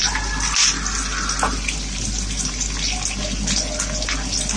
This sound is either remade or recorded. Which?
recorded